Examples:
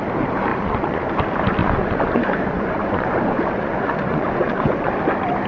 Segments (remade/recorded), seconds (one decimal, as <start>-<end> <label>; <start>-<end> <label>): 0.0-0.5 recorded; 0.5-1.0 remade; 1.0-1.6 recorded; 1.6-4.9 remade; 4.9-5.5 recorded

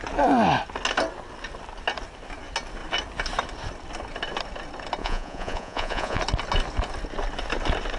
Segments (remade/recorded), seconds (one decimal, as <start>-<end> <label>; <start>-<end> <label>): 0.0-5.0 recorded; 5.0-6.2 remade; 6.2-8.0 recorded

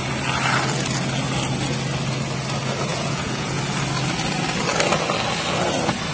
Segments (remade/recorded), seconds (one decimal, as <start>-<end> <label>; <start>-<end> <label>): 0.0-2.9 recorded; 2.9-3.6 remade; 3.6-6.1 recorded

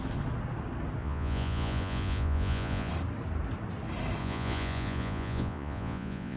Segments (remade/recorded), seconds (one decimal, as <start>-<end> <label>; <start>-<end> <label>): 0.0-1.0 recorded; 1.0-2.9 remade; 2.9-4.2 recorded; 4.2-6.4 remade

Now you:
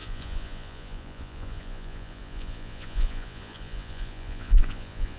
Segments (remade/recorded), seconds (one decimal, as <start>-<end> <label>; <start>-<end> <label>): 0.0-5.2 remade

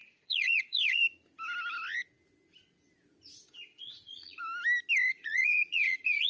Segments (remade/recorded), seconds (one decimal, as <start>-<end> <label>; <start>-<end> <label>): 0.0-1.0 remade; 1.0-3.8 recorded; 3.8-4.4 remade; 4.4-5.1 recorded; 5.1-6.3 remade